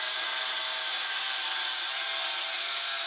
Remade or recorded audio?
recorded